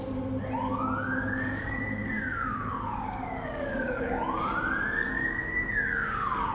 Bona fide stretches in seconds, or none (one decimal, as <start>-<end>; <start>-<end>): 0.0-0.7; 4.2-5.0

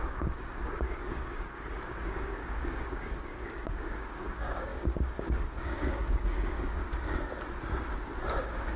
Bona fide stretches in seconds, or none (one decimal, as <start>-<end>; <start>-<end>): 6.8-8.4

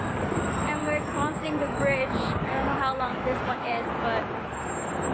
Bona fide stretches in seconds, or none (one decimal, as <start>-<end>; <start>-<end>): 0.0-0.8; 3.9-5.1